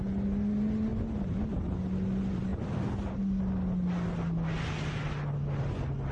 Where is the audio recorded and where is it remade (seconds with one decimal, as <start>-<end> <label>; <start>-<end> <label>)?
0.0-6.1 recorded

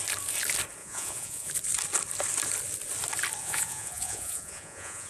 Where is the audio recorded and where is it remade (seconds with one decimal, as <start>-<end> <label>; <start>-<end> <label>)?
0.0-0.8 recorded; 0.8-1.5 remade; 1.5-3.4 recorded; 3.4-5.1 remade